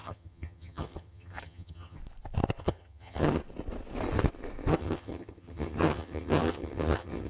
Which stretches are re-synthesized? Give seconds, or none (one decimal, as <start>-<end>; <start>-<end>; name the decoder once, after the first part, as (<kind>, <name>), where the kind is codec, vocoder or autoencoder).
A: 0.0-2.0 (vocoder, HiFi-GAN); 2.6-3.4; 4.7-7.3